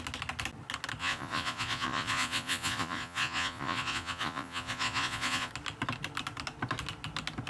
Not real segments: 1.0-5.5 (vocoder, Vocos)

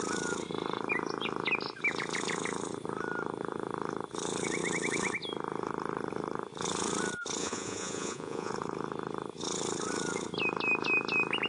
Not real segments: 7.4-8.5 (vocoder, Vocos)

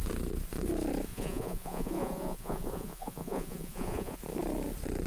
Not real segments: 1.1-4.2 (vocoder, Vocos)

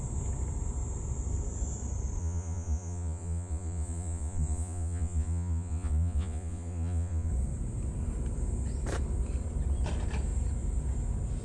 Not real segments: 2.2-7.3 (vocoder, Vocos)

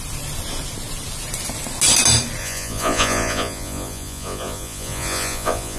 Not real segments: 2.4-5.8 (vocoder, Vocos)

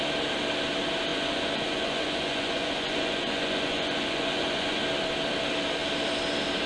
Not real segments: 1.1-4.8 (vocoder, Vocos)

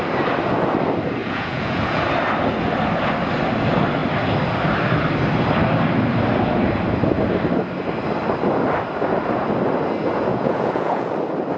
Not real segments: 1.2-2.0 (vocoder, Vocos); 10.3-11.1